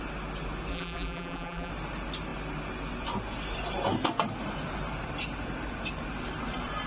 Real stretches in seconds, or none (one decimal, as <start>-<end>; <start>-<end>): 0.0-0.7; 1.7-6.9